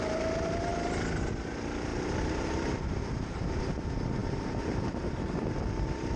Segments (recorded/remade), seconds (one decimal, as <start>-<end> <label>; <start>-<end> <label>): 0.0-1.9 recorded; 1.9-3.5 remade; 3.5-4.2 recorded; 4.2-4.8 remade; 4.8-6.2 recorded